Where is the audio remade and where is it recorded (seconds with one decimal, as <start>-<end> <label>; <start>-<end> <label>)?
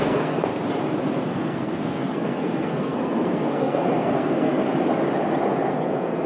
0.0-0.5 remade; 0.5-1.3 recorded; 1.3-4.6 remade; 4.6-5.7 recorded; 5.7-6.3 remade